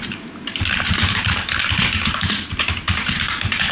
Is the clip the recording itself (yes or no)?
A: no